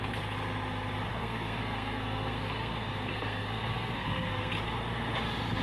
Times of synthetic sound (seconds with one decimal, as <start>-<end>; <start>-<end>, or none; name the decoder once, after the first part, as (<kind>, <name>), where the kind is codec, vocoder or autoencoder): 1.1-4.5 (codec, SNAC)